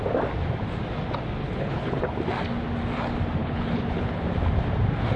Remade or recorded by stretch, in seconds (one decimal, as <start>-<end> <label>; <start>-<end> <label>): 0.0-1.4 recorded; 1.4-2.0 remade; 2.0-3.4 recorded; 3.4-4.2 remade; 4.2-5.2 recorded